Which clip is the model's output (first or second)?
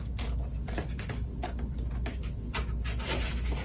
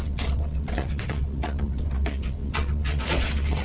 second